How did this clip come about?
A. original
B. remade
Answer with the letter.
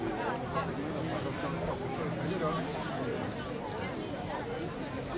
A